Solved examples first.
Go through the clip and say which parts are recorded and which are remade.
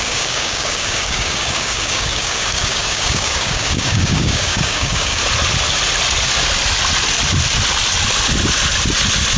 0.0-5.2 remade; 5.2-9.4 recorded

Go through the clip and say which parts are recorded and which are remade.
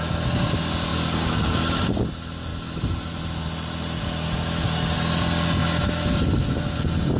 0.0-0.9 recorded; 0.9-2.0 remade; 2.0-7.2 recorded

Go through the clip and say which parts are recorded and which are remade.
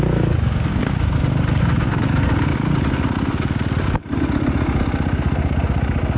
0.0-0.8 remade; 0.8-1.6 recorded; 1.6-2.5 remade; 2.5-6.2 recorded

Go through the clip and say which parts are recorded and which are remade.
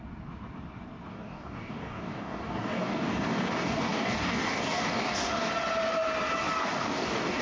0.0-1.1 recorded; 1.1-5.5 remade; 5.5-6.6 recorded; 6.6-7.4 remade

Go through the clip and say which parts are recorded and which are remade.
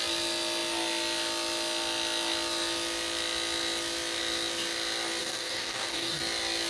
0.0-5.2 recorded; 5.2-6.2 remade; 6.2-6.7 recorded